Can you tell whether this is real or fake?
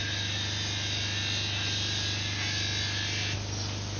real